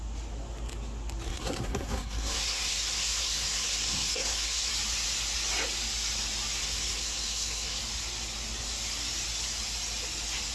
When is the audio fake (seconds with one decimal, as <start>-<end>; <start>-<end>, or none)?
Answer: 1.3-4.7; 6.6-7.8